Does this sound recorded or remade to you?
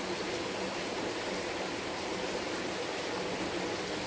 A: recorded